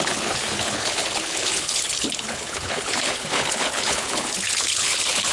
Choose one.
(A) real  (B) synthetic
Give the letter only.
B